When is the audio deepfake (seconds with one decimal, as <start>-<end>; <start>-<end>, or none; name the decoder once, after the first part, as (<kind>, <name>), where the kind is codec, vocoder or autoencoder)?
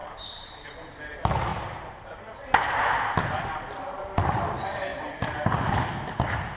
0.0-1.0 (vocoder, BigVGAN v2); 1.5-2.5; 4.9-5.7